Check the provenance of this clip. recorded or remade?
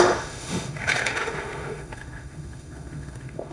remade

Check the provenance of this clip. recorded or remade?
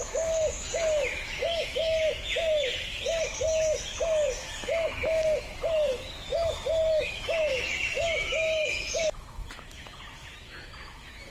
remade